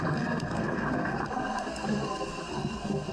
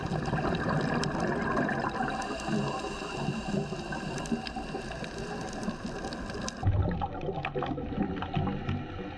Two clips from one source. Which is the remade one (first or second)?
first